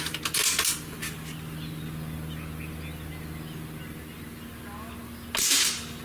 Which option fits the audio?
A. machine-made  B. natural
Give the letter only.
B